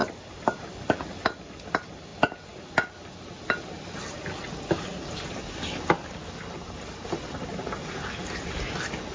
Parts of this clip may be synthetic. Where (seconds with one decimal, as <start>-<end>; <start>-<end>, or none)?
0.0-1.7